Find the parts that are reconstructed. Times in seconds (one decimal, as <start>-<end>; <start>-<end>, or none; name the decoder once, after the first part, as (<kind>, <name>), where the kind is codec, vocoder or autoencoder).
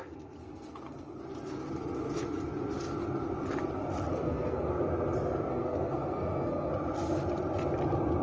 0.4-1.2 (codec, SNAC); 4.1-4.7; 5.5-6.7